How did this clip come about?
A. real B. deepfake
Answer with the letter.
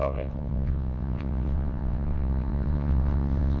B